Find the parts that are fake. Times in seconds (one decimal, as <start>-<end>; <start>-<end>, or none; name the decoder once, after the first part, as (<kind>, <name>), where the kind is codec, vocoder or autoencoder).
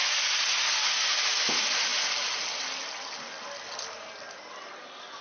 none